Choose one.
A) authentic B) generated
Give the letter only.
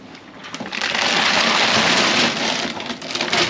A